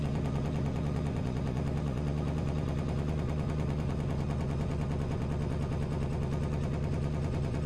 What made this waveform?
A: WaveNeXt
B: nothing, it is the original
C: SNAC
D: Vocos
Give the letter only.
D